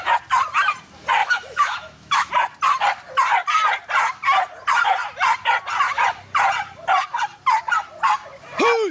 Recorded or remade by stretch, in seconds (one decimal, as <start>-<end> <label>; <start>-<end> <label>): 0.0-1.2 recorded; 1.2-2.3 remade; 2.3-8.9 recorded

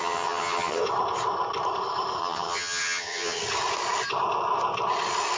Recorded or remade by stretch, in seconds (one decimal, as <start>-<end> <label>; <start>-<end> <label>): 0.0-0.8 remade; 0.8-2.2 recorded; 2.2-3.4 remade; 3.4-5.4 recorded

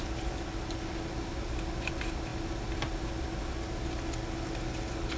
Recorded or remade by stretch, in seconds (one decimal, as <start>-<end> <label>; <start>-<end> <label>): 0.0-5.2 recorded

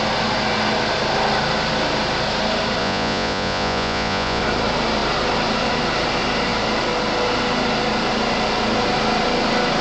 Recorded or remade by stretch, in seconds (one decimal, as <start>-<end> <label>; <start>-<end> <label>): 0.0-2.8 recorded; 2.8-4.4 remade; 4.4-9.8 recorded

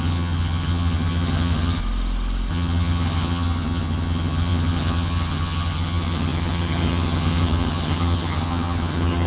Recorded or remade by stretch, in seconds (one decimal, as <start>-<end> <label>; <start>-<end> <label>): 0.0-1.8 remade; 1.8-2.5 recorded; 2.5-9.3 remade

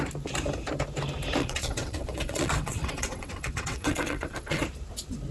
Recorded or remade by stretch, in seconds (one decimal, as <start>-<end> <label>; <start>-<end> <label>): 0.0-1.4 recorded; 1.4-4.6 remade; 4.6-5.3 recorded

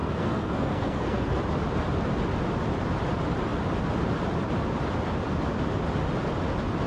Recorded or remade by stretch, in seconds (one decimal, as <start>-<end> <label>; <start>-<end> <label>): 0.0-1.4 remade; 1.4-6.9 recorded